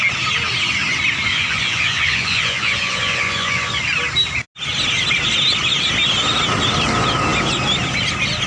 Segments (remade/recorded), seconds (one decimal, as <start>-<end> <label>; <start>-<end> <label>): 0.0-1.3 recorded; 1.3-3.7 remade; 3.7-8.5 recorded